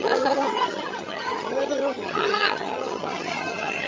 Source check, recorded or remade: remade